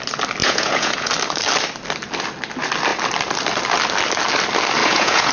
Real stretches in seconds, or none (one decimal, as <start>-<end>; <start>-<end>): 0.0-0.4; 1.1-4.8